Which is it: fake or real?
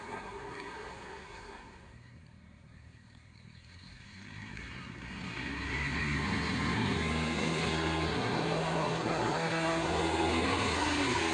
fake